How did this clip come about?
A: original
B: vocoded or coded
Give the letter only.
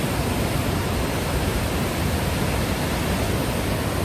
A